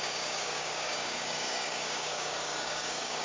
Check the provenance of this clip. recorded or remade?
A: remade